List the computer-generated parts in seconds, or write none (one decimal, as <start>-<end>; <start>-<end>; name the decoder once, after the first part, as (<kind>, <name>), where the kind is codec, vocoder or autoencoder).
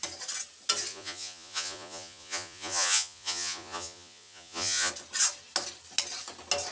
0.9-4.9 (vocoder, Vocos)